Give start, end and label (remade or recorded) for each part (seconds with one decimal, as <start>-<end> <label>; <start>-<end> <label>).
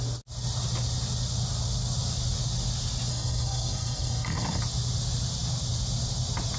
0.0-3.1 recorded; 3.1-4.6 remade; 4.6-6.6 recorded